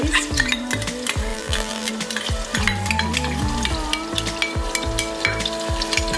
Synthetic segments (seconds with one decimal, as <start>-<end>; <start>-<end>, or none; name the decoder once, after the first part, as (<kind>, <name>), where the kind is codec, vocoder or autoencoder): 1.3-1.9 (vocoder, BigVGAN v2)